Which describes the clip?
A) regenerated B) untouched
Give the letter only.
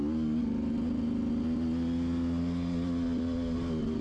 B